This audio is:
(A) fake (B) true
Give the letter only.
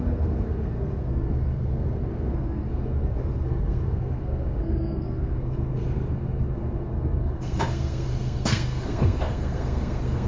A